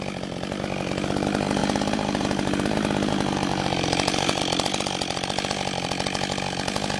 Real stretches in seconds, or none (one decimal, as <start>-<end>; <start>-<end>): 0.0-1.6; 4.4-7.0